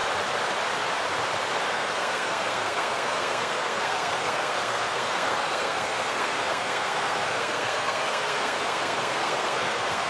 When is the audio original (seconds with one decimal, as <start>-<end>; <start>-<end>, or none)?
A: 0.0-1.7